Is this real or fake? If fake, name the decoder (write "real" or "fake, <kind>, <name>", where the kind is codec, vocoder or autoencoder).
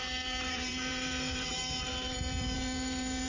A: fake, vocoder, BigVGAN v2